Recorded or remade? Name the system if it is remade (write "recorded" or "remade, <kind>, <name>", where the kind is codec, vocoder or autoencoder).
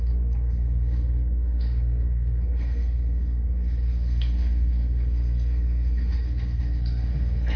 remade, codec, SNAC